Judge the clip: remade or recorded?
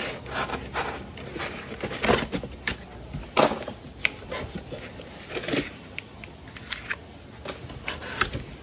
recorded